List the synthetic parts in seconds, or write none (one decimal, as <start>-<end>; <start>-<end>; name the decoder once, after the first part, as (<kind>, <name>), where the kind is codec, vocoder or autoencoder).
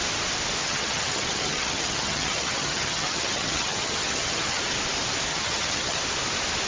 0.6-4.6 (vocoder, HiFi-GAN); 5.3-6.0